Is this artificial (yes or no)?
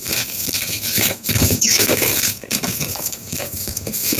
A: yes